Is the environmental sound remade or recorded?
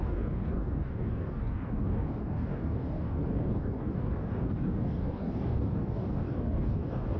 remade